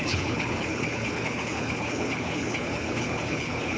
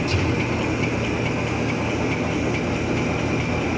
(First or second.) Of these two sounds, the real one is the second